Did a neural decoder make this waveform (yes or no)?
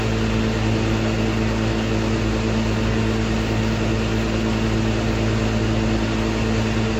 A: no